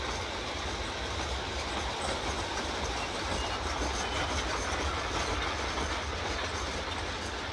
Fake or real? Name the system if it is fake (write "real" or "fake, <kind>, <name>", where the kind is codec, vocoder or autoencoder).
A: real